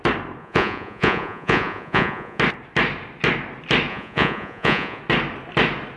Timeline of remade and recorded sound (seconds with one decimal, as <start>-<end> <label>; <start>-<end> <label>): 0.0-0.4 recorded; 0.4-2.4 remade; 2.4-3.9 recorded; 3.9-5.0 remade; 5.0-6.0 recorded